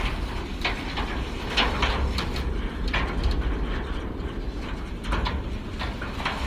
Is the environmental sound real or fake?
real